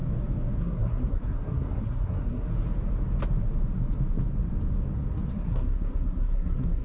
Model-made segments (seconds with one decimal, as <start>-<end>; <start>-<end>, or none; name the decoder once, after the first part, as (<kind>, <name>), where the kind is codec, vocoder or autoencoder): 0.6-2.5 (codec, SNAC); 5.3-6.8